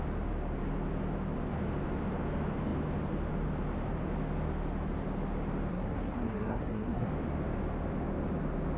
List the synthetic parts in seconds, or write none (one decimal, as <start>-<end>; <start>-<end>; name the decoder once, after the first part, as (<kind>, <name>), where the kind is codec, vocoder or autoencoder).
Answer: 5.7-7.1 (codec, SNAC)